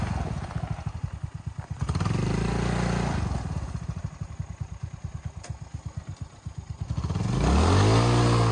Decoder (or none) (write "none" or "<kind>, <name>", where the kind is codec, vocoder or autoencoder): none